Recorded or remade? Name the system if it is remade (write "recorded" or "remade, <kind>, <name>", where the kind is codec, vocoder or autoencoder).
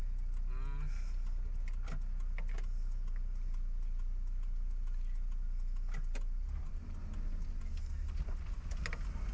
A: recorded